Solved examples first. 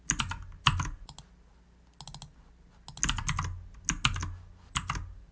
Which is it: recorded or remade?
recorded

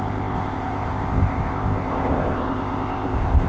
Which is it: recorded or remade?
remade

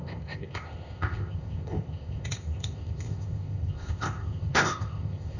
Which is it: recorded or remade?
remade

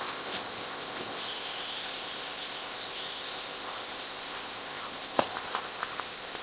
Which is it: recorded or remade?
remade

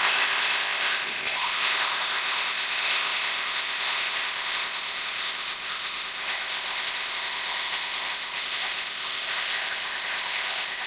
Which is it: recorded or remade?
remade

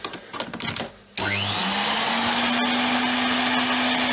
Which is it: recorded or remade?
recorded